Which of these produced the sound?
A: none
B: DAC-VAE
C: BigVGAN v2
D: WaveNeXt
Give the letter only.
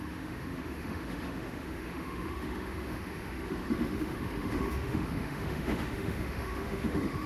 B